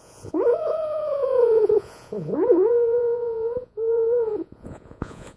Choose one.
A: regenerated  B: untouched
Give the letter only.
A